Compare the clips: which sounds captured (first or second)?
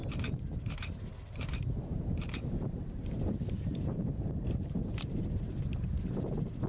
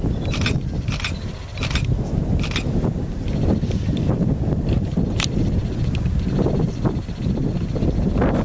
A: second